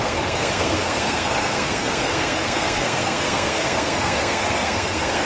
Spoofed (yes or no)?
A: yes